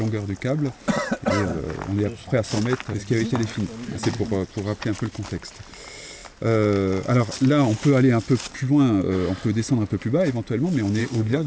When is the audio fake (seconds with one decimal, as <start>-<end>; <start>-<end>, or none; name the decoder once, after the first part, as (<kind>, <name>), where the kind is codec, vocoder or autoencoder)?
11.0-11.5 (codec, SNAC)